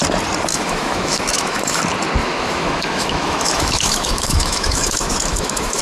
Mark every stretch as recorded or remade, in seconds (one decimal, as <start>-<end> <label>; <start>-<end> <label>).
0.0-0.5 recorded; 0.5-1.8 remade; 1.8-2.2 recorded; 2.2-5.8 remade